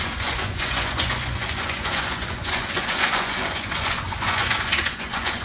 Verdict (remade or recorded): remade